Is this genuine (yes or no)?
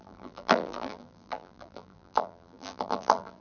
no